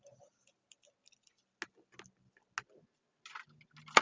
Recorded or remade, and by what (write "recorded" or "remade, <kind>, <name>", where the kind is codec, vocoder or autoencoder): recorded